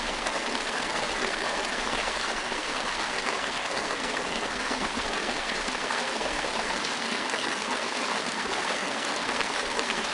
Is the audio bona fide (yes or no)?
no